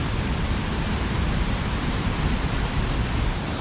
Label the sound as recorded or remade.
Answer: remade